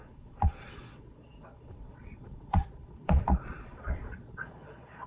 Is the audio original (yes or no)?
no